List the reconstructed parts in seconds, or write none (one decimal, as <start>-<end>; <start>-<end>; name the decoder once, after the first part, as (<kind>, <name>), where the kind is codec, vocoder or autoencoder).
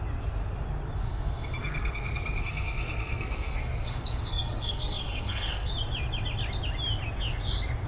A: 1.0-5.7 (codec, SNAC)